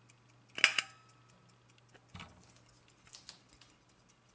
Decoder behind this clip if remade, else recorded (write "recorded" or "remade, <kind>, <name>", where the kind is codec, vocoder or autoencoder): recorded